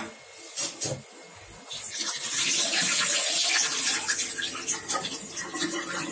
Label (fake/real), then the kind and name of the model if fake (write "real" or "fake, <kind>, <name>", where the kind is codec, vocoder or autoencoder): real